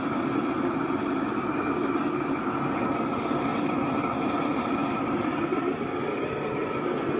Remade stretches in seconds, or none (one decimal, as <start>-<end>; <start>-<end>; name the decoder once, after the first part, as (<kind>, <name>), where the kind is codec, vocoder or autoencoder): none